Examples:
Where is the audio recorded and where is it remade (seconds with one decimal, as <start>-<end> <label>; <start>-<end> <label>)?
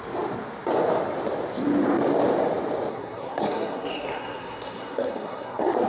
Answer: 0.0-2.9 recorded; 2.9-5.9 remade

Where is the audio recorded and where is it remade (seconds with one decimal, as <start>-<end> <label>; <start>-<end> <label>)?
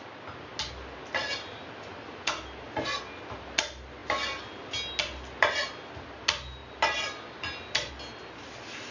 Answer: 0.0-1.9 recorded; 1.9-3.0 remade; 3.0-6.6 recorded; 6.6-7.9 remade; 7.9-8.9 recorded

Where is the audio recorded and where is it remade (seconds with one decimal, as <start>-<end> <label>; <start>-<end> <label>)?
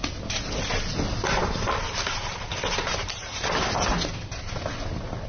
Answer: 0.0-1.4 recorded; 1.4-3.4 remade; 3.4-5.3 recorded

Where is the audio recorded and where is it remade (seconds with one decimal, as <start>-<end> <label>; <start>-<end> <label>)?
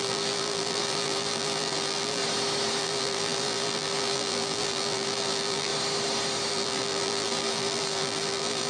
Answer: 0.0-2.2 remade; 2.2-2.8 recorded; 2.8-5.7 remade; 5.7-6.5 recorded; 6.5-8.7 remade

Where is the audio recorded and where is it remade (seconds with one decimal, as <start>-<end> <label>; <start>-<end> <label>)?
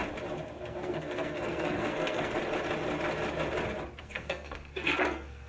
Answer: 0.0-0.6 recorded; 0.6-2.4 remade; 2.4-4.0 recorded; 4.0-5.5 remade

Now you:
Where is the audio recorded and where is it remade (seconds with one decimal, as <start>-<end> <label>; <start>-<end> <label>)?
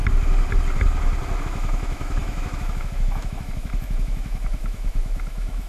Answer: 0.0-1.4 recorded; 1.4-5.7 remade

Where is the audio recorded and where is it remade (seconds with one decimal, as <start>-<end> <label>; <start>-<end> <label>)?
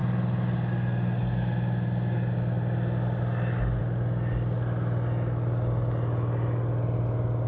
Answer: 0.0-7.5 recorded